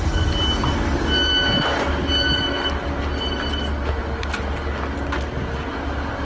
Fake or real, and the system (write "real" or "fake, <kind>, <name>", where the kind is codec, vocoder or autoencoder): real